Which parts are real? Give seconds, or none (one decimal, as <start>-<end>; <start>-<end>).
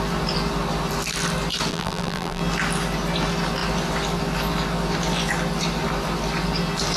0.0-1.7; 2.4-7.0